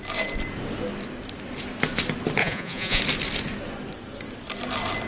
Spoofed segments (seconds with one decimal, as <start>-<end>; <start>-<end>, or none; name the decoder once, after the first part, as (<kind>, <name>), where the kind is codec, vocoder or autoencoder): 2.4-3.0 (vocoder, Vocos)